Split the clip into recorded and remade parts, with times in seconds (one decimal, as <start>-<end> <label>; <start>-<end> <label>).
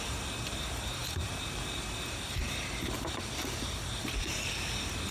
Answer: 0.0-5.1 remade